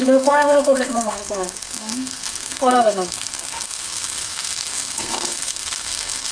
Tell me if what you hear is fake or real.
fake